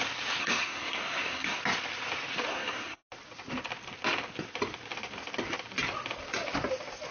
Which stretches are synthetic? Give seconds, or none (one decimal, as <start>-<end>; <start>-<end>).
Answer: 0.4-1.6; 2.5-3.0